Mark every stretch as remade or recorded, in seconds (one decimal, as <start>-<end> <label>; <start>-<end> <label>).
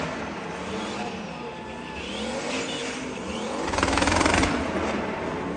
0.0-5.6 recorded